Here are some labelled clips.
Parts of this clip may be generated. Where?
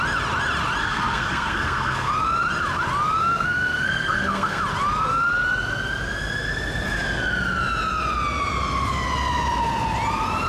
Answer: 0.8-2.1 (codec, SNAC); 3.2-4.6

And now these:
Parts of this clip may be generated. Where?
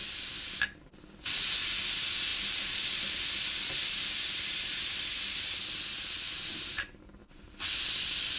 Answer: none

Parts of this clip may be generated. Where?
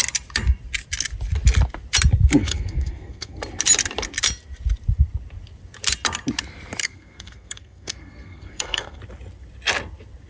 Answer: 2.4-3.4 (codec, SNAC); 6.8-9.0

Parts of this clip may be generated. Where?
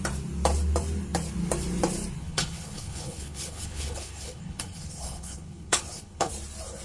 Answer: 2.2-6.3 (codec, HILCodec)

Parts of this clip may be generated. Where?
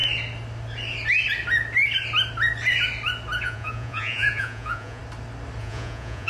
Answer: 3.4-5.0 (vocoder, Vocos); 5.6-6.3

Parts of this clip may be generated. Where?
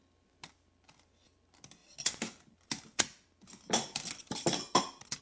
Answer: none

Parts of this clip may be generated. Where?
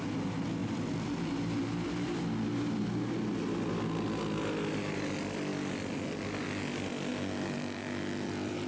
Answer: 0.6-2.8 (vocoder, BigVGAN v2); 7.1-8.7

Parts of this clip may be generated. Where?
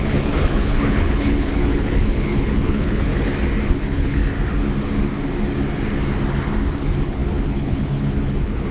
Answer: 0.0-3.1 (codec, HILCodec); 3.8-4.2; 6.8-8.7